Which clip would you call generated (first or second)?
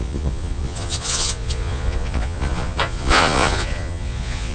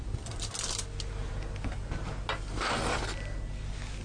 first